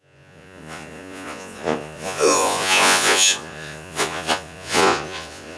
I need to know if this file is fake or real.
fake